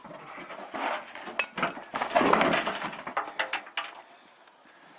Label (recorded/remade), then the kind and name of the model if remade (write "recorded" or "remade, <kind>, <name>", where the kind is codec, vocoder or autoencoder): recorded